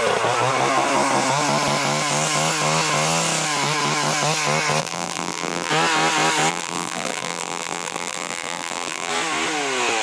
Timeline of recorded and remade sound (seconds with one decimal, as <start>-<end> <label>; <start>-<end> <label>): 0.0-4.8 recorded; 4.8-5.7 remade; 5.7-6.5 recorded; 6.5-9.1 remade; 9.1-10.0 recorded